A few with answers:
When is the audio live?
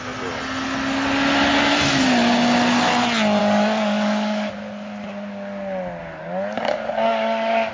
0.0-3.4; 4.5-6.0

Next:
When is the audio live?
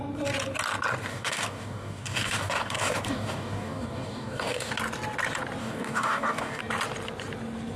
0.0-1.1; 4.7-5.6; 6.6-7.8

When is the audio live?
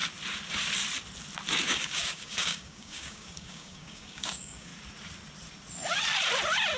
0.0-1.6; 4.7-6.8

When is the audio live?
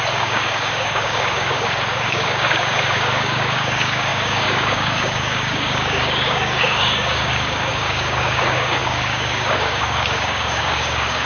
none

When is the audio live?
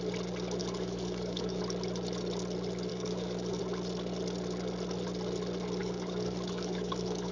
0.0-0.6; 1.6-2.9; 3.6-5.8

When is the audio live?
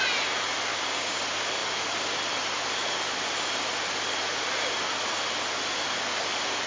0.0-0.7; 1.2-6.7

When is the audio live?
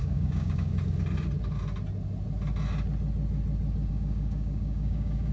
0.7-3.9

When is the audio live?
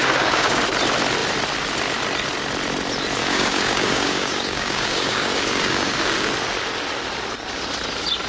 0.6-3.2; 6.3-8.3